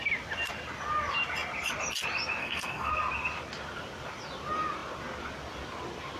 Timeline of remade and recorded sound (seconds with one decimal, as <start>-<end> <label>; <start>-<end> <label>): 0.0-2.4 recorded; 2.4-2.9 remade; 2.9-6.2 recorded

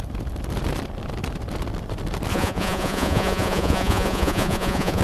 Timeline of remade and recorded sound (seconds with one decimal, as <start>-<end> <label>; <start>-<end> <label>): 0.0-2.3 recorded; 2.3-5.0 remade

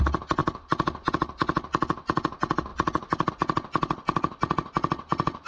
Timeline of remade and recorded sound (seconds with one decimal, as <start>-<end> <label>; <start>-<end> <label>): 0.0-5.5 recorded

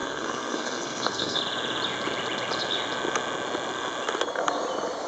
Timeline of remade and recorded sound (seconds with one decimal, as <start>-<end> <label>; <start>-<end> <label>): 0.0-1.4 remade; 1.4-5.1 recorded

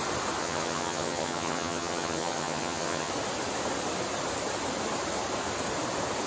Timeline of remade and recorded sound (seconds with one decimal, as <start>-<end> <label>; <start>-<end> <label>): 0.0-0.4 recorded; 0.4-3.1 remade; 3.1-6.3 recorded

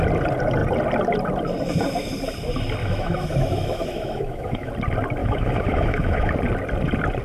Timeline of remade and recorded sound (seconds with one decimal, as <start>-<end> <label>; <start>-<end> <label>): 0.0-2.8 recorded; 2.8-4.7 remade; 4.7-5.2 recorded; 5.2-6.3 remade; 6.3-7.2 recorded